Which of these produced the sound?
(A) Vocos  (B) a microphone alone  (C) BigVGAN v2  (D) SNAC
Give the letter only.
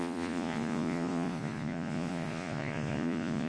A